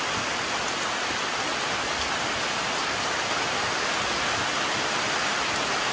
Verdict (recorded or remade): recorded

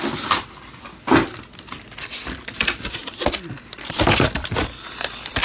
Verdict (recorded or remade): recorded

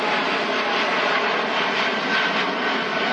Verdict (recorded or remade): recorded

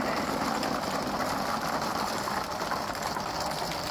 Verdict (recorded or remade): recorded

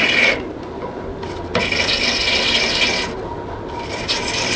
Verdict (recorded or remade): recorded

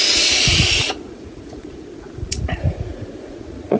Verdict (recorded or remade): remade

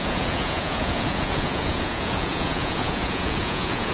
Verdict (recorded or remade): remade